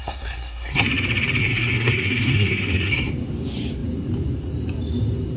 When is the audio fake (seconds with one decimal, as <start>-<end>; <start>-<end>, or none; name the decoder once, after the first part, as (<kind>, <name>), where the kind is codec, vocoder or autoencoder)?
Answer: 0.0-0.9 (codec, SNAC); 1.4-3.1